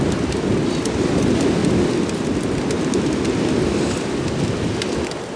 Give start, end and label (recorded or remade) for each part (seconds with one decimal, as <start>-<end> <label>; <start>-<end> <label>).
0.0-5.4 recorded